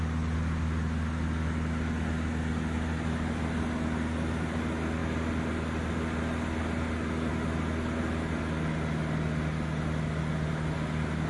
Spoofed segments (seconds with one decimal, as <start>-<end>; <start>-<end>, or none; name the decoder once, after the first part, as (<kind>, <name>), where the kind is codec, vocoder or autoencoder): none